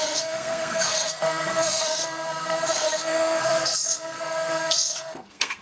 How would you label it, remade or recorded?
remade